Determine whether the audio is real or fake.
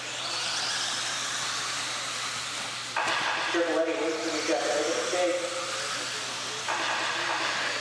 real